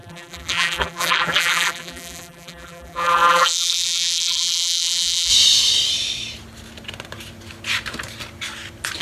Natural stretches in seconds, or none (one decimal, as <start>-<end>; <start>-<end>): 5.3-9.0